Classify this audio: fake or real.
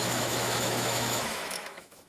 fake